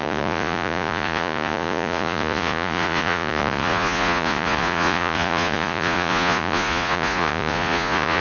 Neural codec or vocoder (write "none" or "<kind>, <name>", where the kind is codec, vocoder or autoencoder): vocoder, Vocos